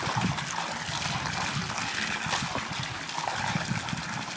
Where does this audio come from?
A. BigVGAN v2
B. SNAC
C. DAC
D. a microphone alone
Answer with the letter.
D